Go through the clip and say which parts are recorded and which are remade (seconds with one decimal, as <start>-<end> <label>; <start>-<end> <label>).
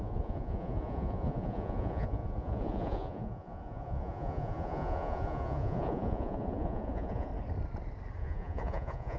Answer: 0.0-7.3 remade; 7.3-8.2 recorded; 8.2-9.2 remade